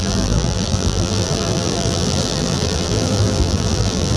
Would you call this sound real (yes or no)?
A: no